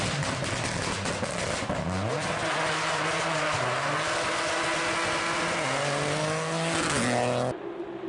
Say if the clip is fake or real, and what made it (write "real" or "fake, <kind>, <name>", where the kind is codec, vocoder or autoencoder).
real